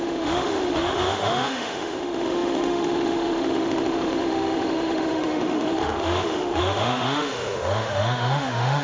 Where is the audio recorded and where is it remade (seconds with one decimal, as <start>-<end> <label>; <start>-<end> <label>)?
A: 0.0-8.8 remade